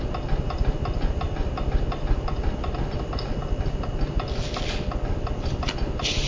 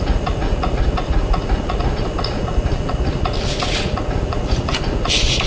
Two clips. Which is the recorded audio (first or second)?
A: first